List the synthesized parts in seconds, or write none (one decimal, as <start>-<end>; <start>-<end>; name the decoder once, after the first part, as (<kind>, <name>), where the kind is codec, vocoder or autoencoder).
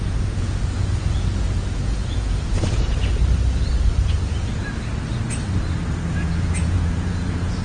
0.0-3.0 (vocoder, Vocos); 6.1-7.6